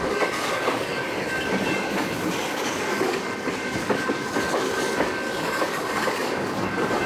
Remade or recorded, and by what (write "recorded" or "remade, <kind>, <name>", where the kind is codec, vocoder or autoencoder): remade, codec, DAC